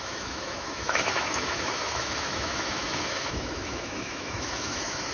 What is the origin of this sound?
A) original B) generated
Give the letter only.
B